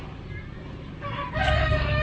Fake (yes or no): no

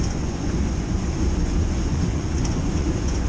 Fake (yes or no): yes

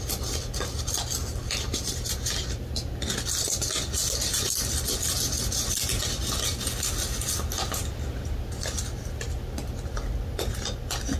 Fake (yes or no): no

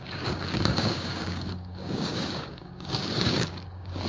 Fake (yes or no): yes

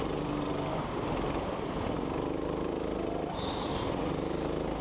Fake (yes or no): yes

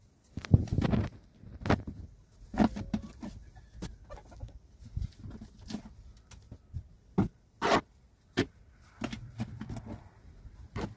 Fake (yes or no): no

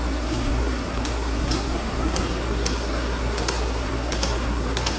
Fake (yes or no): yes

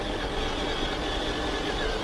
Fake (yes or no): no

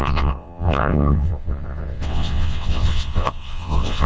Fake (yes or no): yes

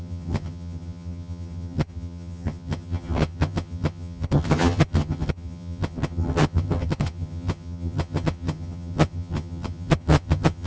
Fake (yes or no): yes